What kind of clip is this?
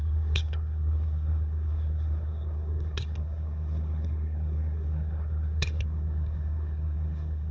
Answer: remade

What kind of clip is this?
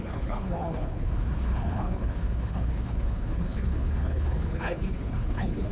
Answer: remade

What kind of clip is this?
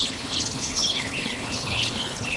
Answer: remade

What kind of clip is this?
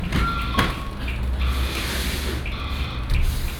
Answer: recorded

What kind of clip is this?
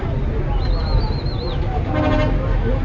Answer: recorded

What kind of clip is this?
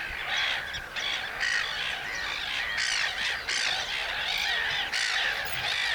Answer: recorded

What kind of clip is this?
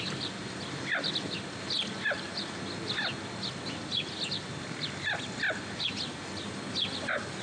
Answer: recorded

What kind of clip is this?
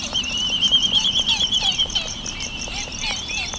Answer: remade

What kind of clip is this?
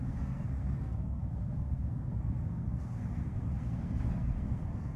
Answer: remade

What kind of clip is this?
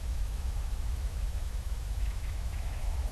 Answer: remade